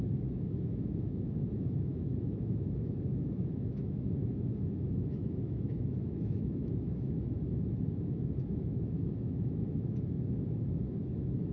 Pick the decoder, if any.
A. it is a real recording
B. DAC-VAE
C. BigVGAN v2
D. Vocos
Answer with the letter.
B